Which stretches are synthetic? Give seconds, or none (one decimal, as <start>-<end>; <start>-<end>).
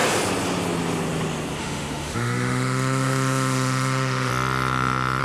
1.6-4.3